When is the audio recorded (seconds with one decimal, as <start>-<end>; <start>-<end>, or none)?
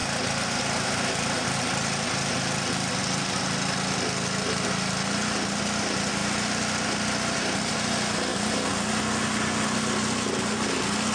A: 0.0-11.1